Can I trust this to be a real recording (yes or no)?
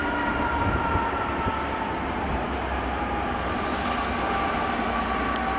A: yes